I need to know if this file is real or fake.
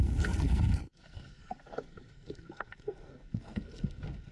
fake